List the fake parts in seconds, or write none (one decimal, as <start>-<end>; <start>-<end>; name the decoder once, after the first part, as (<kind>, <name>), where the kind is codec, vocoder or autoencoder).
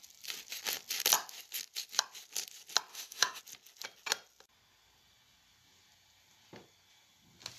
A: 2.9-3.4 (autoencoder, DAC-VAE)